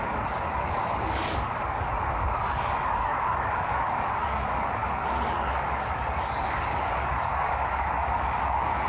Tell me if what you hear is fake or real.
fake